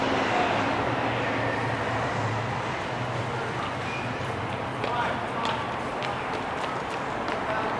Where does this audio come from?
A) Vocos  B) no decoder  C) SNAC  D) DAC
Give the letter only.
B